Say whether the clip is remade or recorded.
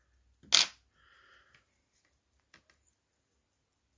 recorded